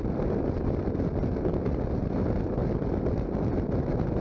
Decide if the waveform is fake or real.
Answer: real